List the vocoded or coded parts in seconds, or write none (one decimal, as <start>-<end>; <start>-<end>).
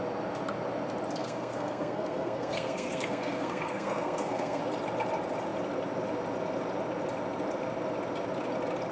1.2-4.6